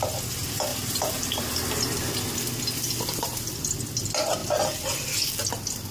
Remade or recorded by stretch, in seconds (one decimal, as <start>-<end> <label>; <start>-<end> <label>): 0.0-0.7 recorded; 0.7-2.1 remade; 2.1-5.9 recorded